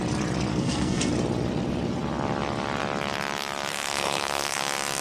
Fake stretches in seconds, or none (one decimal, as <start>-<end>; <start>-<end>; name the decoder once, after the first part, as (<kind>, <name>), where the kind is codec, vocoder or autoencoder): 0.5-1.1 (codec, SNAC); 3.7-4.6